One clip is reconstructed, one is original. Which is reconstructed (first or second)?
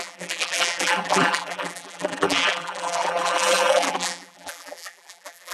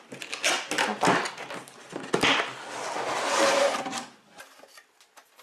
first